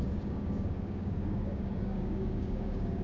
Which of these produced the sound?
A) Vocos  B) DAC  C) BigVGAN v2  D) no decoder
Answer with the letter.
B